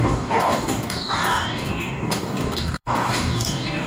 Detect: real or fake fake